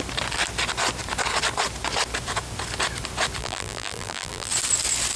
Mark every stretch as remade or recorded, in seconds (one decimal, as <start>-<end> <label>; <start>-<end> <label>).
0.0-3.4 recorded; 3.4-4.5 remade; 4.5-5.2 recorded